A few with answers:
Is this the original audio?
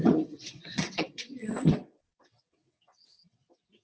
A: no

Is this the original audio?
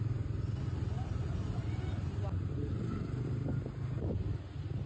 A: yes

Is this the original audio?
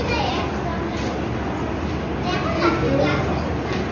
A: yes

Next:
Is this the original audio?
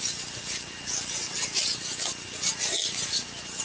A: yes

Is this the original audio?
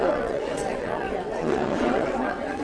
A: no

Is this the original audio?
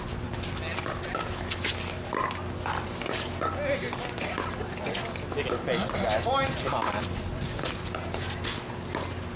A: yes